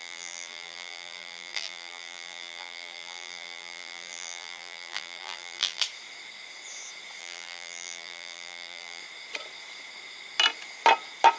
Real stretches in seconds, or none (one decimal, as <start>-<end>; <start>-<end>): 5.8-7.2; 9.0-11.4